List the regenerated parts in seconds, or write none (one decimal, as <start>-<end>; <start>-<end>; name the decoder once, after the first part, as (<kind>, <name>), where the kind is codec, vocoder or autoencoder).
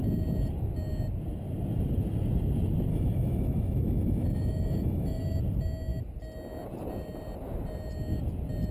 2.9-5.2 (autoencoder, DAC-VAE)